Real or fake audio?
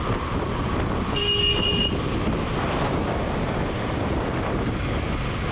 real